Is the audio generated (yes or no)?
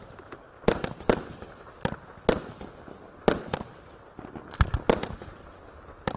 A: no